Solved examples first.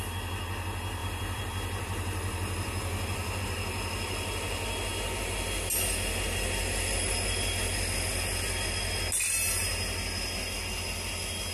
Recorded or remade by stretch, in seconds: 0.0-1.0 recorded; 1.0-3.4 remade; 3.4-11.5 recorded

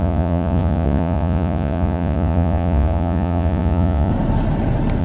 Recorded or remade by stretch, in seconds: 0.0-4.1 remade; 4.1-5.0 recorded